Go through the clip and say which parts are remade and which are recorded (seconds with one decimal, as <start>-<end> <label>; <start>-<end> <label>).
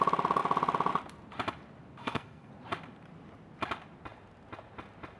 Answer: 0.0-2.0 recorded; 2.0-2.5 remade; 2.5-5.2 recorded